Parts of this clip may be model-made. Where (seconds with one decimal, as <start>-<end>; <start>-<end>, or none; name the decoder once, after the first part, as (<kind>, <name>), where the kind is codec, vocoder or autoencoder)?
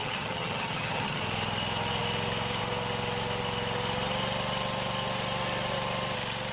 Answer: 0.0-1.2 (vocoder, HiFi-GAN)